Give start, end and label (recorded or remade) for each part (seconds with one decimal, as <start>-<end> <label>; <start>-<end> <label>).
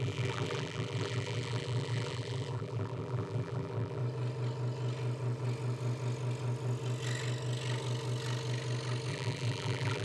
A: 0.0-4.0 remade; 4.0-9.1 recorded; 9.1-10.0 remade